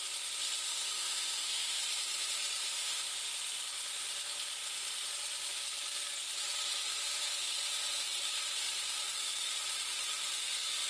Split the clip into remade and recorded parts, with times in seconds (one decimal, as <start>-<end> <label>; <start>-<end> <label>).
0.0-0.7 recorded; 0.7-1.8 remade; 1.8-2.6 recorded; 2.6-3.3 remade; 3.3-10.9 recorded